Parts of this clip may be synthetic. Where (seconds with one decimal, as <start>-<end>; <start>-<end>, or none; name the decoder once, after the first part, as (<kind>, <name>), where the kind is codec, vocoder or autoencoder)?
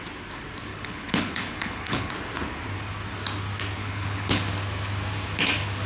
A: 0.7-2.1 (codec, HILCodec); 3.8-4.4